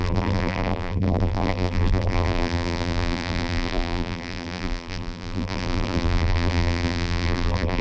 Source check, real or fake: fake